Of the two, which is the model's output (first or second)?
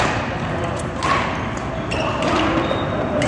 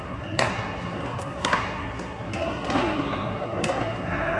second